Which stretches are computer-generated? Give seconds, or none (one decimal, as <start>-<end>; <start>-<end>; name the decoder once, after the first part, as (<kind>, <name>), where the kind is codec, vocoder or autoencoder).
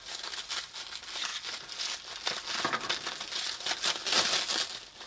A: none